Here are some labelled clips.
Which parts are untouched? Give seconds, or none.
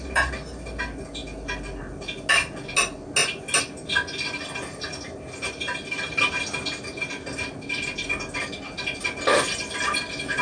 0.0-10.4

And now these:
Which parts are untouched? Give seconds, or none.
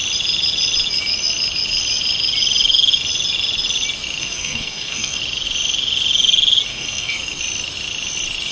0.0-4.2; 5.2-6.7; 7.4-8.5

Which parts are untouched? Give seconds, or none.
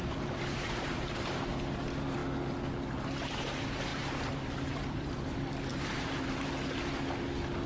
1.4-3.9; 5.1-5.7; 7.0-7.7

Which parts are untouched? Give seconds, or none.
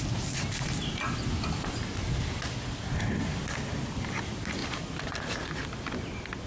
0.0-6.5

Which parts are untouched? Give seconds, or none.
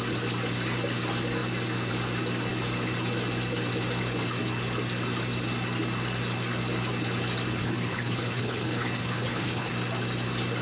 0.0-7.6; 9.7-10.6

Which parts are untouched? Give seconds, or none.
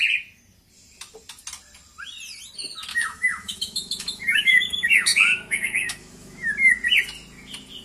0.0-2.9; 6.5-7.8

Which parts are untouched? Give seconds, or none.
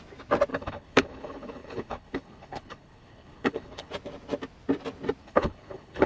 0.0-0.5; 3.9-5.2